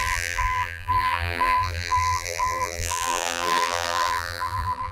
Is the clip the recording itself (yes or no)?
no